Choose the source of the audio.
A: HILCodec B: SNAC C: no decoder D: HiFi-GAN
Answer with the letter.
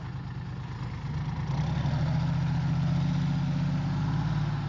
C